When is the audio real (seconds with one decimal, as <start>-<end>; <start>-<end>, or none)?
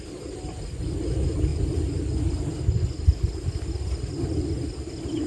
0.0-5.3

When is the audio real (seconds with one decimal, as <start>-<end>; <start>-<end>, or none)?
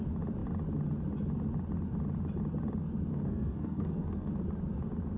0.0-3.1; 4.3-5.2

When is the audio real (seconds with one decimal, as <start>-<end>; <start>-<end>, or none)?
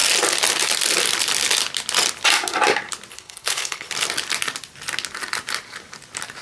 0.0-3.1; 3.9-6.4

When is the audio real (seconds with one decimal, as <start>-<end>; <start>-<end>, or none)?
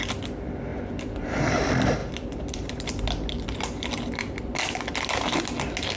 0.0-6.0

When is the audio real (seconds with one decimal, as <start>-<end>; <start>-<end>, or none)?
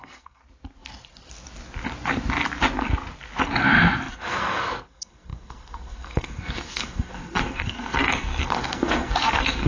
0.4-4.1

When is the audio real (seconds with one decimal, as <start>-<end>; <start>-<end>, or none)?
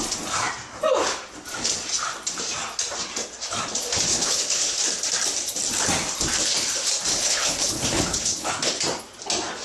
0.0-4.1; 4.8-7.1; 8.5-9.6